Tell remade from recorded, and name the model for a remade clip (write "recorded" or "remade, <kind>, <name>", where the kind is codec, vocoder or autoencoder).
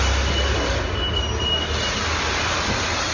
recorded